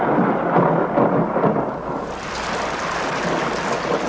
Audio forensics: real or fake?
real